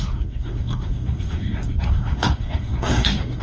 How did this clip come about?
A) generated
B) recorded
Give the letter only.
A